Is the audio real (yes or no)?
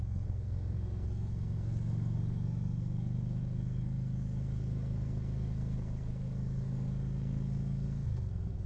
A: no